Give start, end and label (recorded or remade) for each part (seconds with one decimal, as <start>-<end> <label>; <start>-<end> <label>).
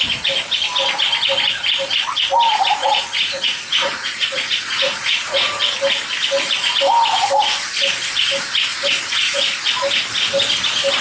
0.0-2.8 recorded; 2.8-5.6 remade; 5.6-8.7 recorded; 8.7-9.4 remade; 9.4-11.0 recorded